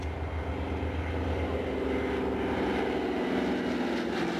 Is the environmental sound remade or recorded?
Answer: recorded